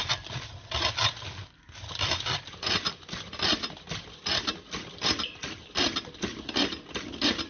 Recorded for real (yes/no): yes